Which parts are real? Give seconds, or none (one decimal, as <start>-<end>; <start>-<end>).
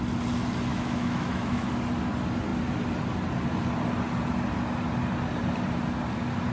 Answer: 0.0-0.7; 1.7-6.5